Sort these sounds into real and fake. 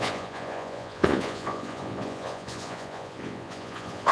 fake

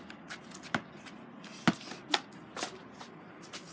real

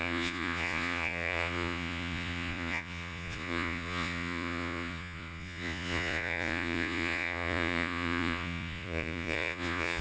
fake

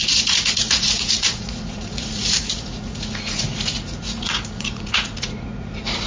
fake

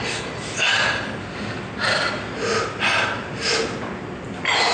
real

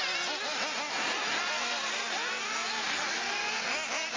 real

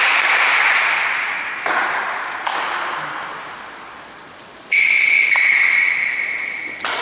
real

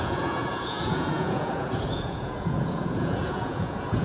fake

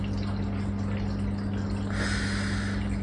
real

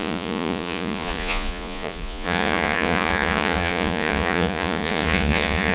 fake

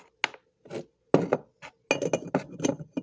real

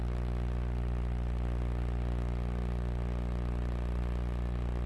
real